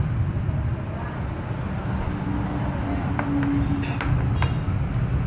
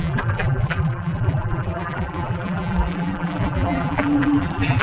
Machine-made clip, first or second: second